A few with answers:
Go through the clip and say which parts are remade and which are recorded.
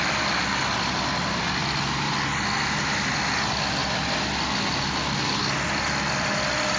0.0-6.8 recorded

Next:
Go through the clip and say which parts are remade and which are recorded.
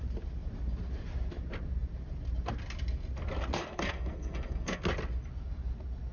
0.0-3.6 recorded; 3.6-4.8 remade; 4.8-6.1 recorded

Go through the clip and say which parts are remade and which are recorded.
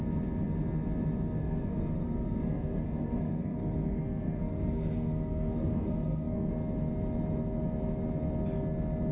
0.0-1.4 recorded; 1.4-6.5 remade; 6.5-9.1 recorded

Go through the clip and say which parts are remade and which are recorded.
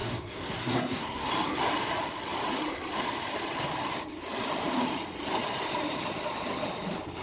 0.0-1.3 remade; 1.3-7.2 recorded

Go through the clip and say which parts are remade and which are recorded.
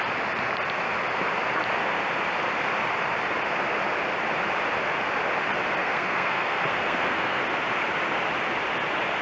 0.0-5.8 recorded; 5.8-7.4 remade; 7.4-9.2 recorded